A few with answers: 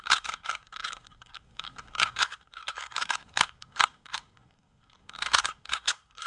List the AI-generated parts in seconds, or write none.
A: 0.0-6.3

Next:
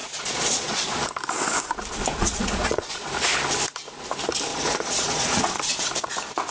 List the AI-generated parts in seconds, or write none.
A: 0.0-1.0; 2.2-3.1; 4.5-5.9

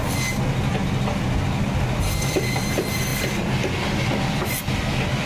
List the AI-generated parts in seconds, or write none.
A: none